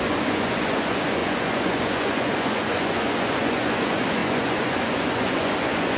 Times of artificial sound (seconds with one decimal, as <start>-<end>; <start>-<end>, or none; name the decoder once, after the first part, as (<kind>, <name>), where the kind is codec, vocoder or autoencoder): 0.0-6.0 (vocoder, Vocos)